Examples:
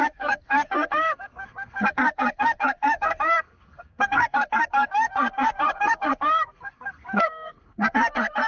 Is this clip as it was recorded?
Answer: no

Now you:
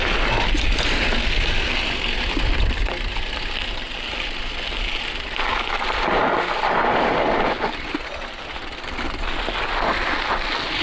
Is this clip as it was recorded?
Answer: yes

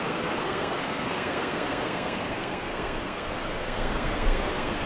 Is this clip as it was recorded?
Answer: no